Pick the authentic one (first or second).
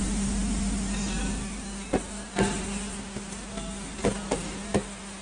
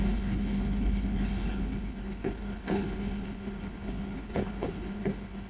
first